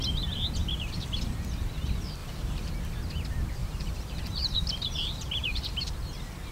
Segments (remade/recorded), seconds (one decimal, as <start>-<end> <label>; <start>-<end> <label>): 0.0-2.2 recorded; 2.2-2.7 remade; 2.7-3.6 recorded; 3.6-5.9 remade; 5.9-6.5 recorded